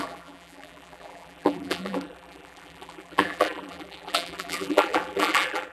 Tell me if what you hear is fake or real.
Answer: fake